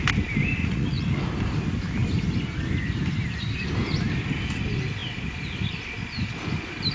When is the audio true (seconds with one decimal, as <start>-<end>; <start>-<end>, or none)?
0.0-0.6; 1.2-6.9